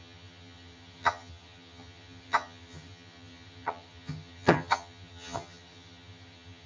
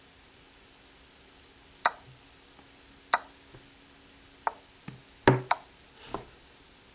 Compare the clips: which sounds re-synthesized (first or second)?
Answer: first